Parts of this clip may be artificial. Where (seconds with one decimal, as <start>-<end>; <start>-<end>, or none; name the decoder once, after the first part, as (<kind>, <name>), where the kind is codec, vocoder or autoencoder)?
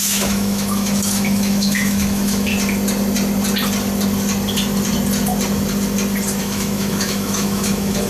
0.0-2.5 (autoencoder, DAC-VAE); 6.4-8.1